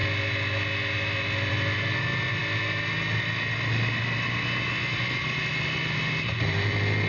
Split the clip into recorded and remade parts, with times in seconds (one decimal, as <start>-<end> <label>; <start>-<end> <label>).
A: 0.0-7.1 recorded